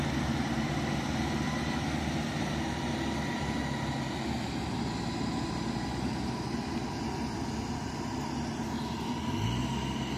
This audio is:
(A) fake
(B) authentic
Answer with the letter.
B